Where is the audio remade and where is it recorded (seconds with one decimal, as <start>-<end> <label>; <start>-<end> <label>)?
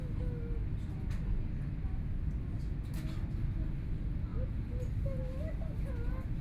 0.0-6.4 recorded